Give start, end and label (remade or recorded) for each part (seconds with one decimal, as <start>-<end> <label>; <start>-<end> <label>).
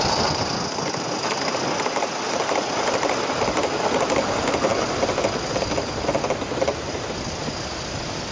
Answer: 0.0-8.3 recorded